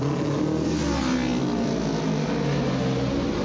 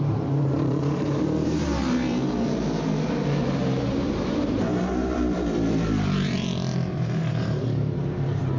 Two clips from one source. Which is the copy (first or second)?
second